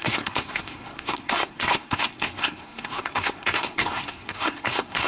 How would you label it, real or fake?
fake